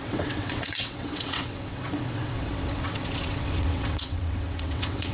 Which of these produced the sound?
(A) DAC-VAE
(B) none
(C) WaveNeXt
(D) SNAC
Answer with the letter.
C